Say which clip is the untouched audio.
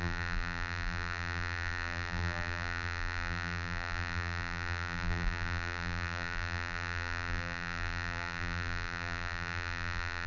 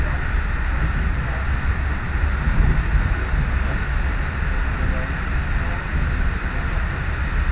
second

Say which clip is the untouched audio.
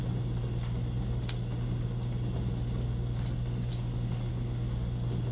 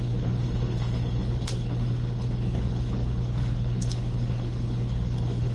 first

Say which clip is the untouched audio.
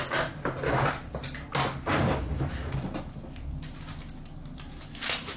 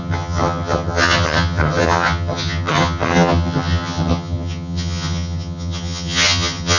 first